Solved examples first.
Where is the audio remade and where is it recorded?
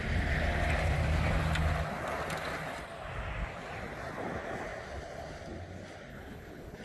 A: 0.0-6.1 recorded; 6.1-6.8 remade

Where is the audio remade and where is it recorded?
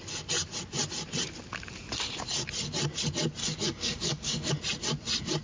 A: 0.0-3.4 recorded; 3.4-4.5 remade; 4.5-5.4 recorded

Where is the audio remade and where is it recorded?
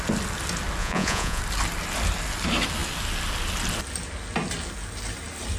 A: 0.0-0.8 recorded; 0.8-1.4 remade; 1.4-5.6 recorded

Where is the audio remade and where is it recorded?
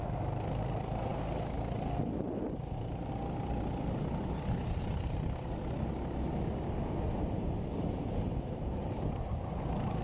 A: 0.0-10.0 recorded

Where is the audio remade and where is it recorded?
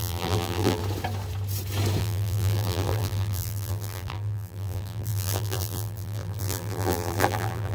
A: 0.0-0.8 remade; 0.8-2.0 recorded; 2.0-7.7 remade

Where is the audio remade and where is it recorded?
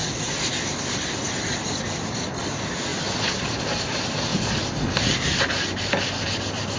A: 0.0-6.8 recorded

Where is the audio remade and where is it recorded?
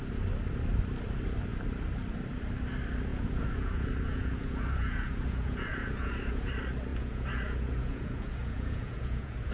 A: 0.0-3.1 recorded; 3.1-6.5 remade; 6.5-6.9 recorded; 6.9-9.5 remade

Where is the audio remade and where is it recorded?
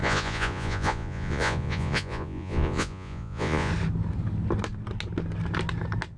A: 0.0-3.7 remade; 3.7-6.2 recorded